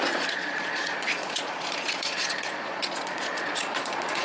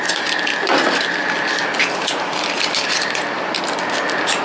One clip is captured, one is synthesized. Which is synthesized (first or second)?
first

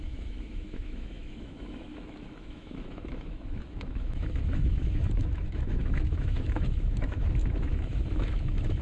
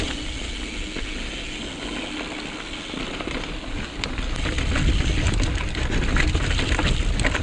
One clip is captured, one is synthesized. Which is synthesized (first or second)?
first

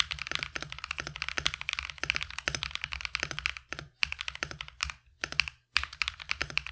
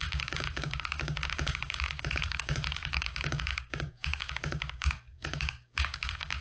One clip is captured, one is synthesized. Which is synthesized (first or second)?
second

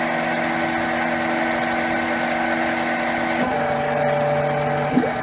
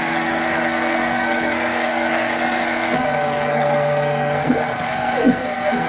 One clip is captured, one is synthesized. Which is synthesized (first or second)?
second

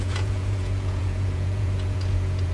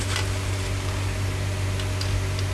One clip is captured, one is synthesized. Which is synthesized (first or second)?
first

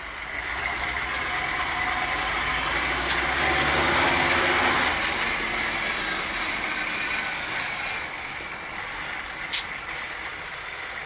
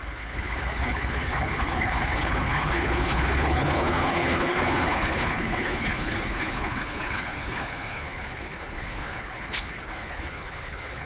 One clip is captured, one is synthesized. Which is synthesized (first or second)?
second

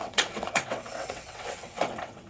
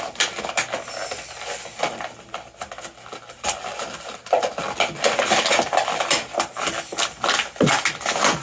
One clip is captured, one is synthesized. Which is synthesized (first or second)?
first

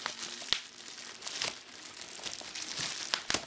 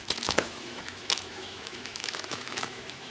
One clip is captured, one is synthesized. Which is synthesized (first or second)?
second